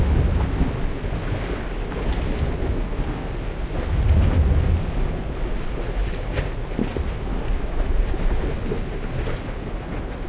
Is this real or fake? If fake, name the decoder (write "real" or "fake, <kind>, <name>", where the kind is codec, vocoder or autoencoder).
real